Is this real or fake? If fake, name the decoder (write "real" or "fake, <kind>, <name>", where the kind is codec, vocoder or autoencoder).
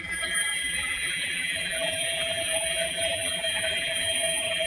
fake, vocoder, BigVGAN v2